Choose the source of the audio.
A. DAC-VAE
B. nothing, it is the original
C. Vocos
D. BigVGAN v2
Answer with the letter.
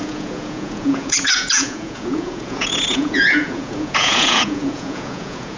C